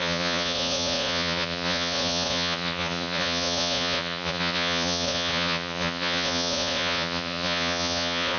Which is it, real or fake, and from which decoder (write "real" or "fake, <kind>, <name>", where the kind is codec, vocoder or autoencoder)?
fake, vocoder, Vocos